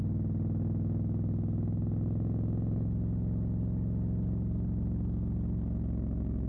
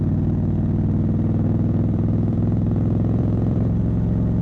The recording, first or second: first